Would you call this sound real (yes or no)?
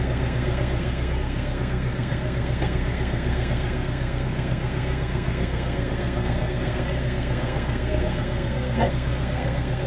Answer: no